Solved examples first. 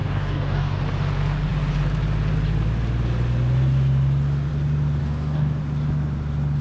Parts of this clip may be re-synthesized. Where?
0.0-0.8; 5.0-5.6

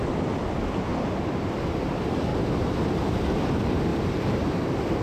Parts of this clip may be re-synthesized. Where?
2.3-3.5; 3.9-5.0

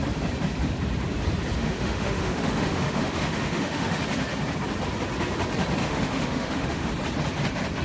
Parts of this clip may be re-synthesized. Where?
1.6-4.0; 5.8-6.9

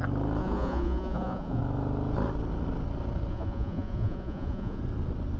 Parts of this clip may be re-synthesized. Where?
0.4-1.6; 3.3-4.8

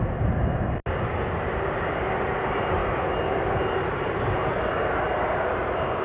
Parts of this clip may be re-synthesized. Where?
none

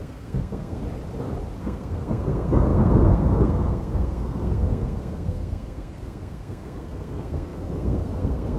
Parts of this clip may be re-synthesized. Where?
0.0-0.8; 1.6-8.6